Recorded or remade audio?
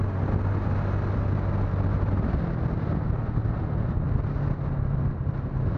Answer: recorded